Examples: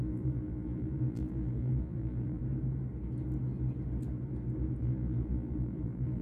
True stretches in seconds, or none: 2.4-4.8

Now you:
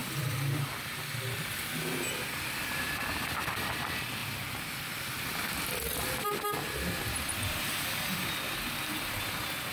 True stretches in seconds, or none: 1.0-9.7

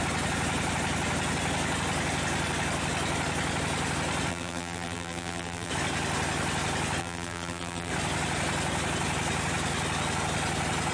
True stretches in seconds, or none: 0.0-4.3; 5.7-7.0; 7.9-10.9

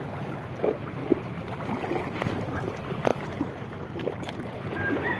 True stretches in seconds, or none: 1.0-1.6

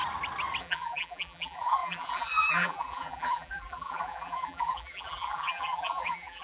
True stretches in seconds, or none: 0.0-0.6

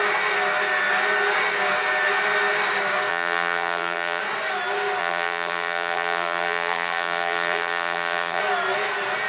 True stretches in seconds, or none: 0.0-3.1; 4.2-5.0; 8.4-9.3